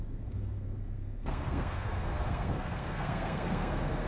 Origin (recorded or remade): remade